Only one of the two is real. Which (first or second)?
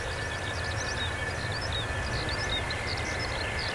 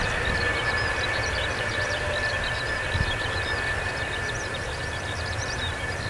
first